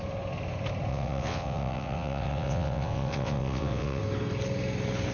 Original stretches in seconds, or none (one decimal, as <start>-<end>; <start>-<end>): 0.0-0.9; 4.0-5.1